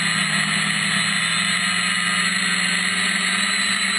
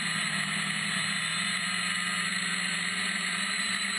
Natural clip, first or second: first